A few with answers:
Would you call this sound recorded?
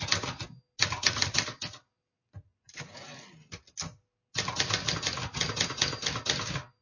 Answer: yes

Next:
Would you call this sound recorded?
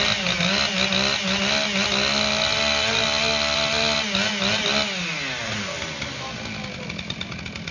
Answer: yes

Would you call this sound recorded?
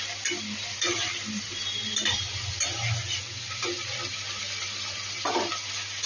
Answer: yes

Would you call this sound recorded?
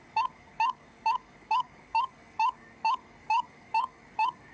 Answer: no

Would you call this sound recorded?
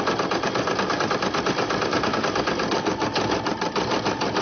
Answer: yes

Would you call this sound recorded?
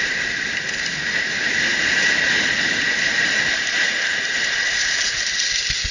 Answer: yes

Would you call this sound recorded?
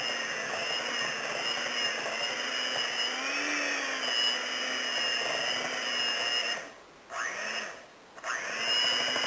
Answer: yes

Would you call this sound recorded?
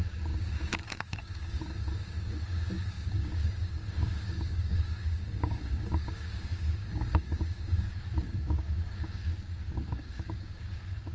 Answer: no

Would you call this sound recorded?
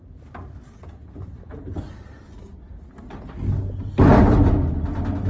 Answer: yes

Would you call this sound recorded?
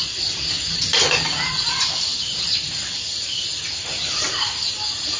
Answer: yes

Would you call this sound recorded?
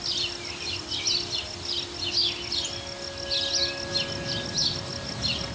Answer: yes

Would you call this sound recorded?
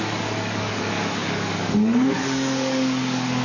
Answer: no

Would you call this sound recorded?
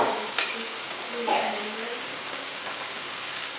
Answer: no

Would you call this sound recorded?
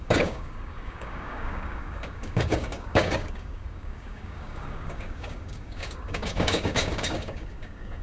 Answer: no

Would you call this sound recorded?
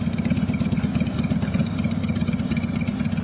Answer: yes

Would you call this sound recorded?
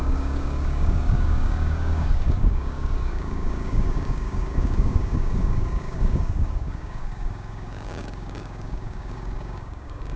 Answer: no